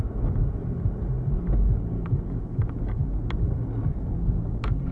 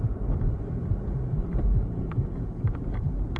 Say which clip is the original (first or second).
first